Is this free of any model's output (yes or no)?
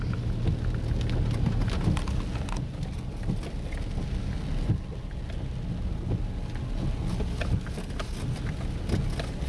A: yes